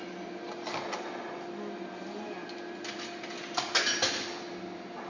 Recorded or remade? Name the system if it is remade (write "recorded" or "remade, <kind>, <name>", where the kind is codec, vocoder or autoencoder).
recorded